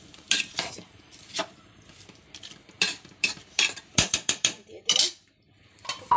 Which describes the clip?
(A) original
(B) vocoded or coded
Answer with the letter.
B